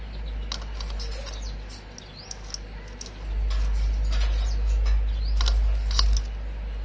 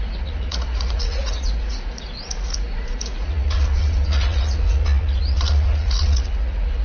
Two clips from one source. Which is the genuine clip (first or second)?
first